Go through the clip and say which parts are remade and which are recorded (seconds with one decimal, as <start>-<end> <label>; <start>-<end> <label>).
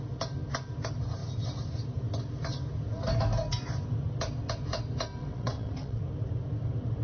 0.0-5.2 recorded; 5.2-6.0 remade; 6.0-7.0 recorded